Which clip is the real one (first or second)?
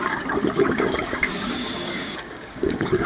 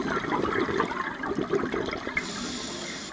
second